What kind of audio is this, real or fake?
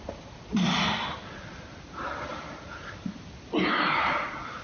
real